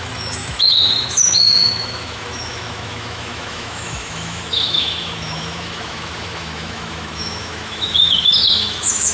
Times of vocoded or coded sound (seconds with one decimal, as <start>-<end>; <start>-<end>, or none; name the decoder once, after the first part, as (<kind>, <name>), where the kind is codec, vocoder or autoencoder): 0.0-9.1 (autoencoder, DAC-VAE)